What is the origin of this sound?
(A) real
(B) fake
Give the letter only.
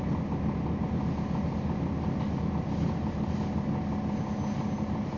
A